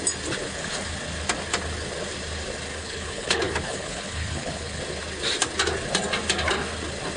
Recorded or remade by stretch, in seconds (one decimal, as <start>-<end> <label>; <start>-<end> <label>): 0.0-2.7 recorded; 2.7-4.8 remade; 4.8-7.2 recorded